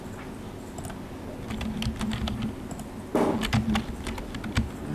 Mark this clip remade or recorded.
recorded